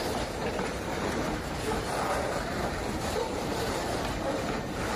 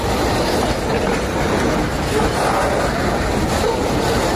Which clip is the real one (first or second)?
second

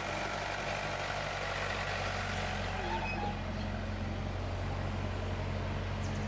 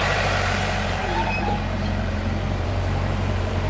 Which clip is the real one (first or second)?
first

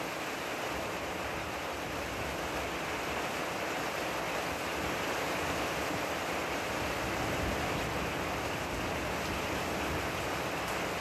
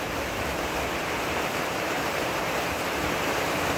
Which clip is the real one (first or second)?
first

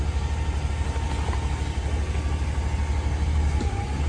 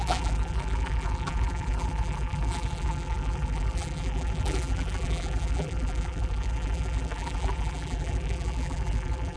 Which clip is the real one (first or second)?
first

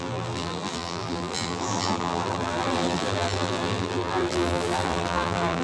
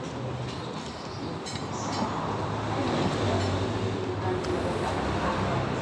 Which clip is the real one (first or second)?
second